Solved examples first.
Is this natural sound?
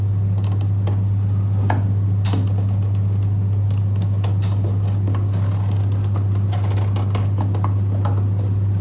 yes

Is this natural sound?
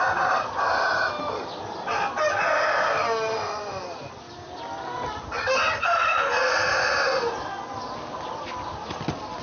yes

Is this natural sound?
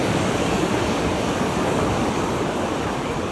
no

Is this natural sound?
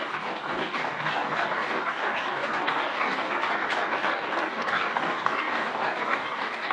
no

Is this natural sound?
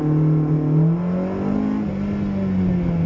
yes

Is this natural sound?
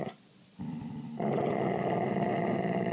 yes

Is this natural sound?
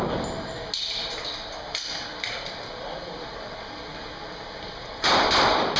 yes